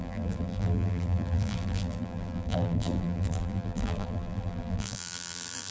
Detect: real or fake fake